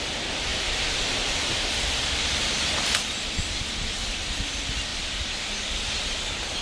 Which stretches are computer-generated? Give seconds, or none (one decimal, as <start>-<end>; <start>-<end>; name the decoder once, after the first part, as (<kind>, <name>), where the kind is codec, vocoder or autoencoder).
0.5-4.5 (vocoder, BigVGAN v2); 4.9-6.0